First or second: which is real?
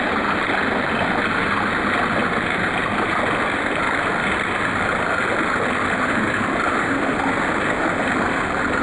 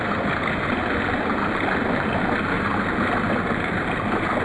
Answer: first